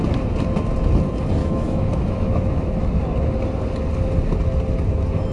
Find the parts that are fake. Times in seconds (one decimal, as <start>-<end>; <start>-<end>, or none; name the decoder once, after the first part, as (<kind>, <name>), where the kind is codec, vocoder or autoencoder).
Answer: 1.4-3.0 (autoencoder, DAC-VAE)